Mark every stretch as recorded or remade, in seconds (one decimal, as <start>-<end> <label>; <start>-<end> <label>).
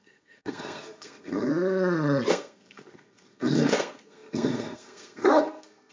0.0-1.5 remade; 1.5-2.3 recorded; 2.3-5.9 remade